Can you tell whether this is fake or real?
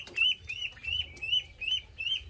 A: real